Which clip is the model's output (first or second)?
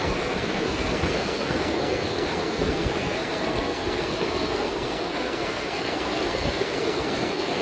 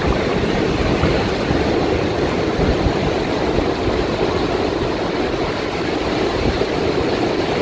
first